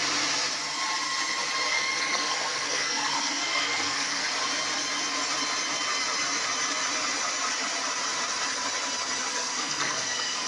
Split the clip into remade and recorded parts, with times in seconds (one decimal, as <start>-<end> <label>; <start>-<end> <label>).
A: 0.0-1.7 recorded; 1.7-4.2 remade; 4.2-9.3 recorded; 9.3-10.5 remade